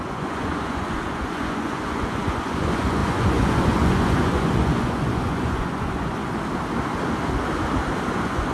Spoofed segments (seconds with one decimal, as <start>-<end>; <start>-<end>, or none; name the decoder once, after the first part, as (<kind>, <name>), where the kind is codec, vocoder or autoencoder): 0.0-6.2 (vocoder, Vocos); 8.1-8.5